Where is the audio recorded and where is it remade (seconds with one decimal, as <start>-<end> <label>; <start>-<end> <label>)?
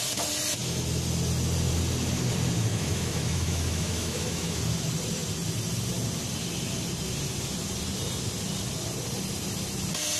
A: 0.0-2.7 recorded; 2.7-4.6 remade; 4.6-10.2 recorded